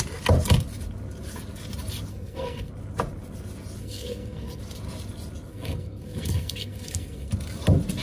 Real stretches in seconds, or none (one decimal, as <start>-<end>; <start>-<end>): 0.0-2.1; 2.7-3.8; 4.6-5.5; 7.3-8.0